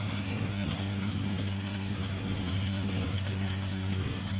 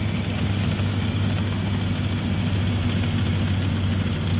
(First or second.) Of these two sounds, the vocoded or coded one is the first